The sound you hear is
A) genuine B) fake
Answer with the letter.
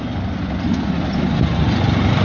A